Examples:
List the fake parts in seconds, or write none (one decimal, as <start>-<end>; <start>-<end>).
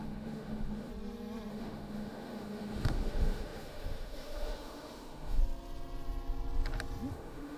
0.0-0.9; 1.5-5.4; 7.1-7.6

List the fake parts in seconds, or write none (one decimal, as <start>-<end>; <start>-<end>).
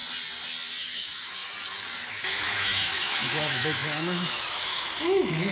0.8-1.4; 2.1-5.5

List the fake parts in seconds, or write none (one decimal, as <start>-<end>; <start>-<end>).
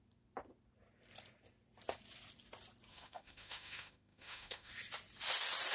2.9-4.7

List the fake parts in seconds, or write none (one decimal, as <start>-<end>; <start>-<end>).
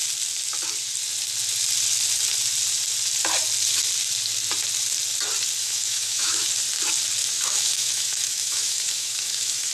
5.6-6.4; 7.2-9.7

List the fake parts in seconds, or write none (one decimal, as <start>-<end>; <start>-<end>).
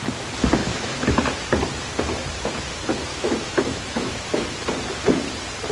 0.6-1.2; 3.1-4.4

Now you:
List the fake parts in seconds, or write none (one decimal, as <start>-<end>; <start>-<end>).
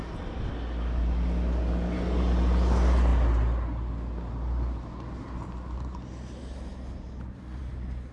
none